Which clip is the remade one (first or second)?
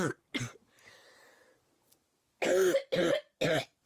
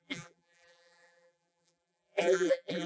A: second